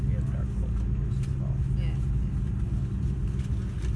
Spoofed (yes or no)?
no